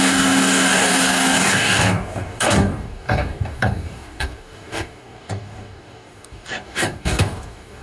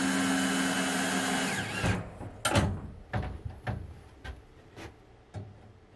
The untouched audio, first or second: second